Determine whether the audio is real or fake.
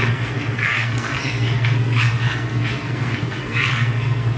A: fake